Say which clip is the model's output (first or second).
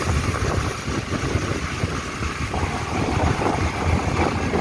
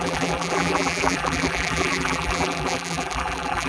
second